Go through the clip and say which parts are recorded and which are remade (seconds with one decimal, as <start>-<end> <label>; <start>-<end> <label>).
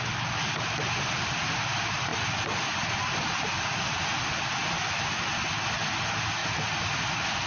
0.0-7.5 recorded